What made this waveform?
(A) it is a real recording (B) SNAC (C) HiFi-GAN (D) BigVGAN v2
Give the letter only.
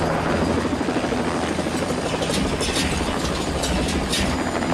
A